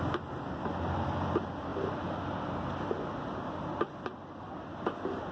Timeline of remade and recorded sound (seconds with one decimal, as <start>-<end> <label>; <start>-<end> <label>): 0.0-5.3 recorded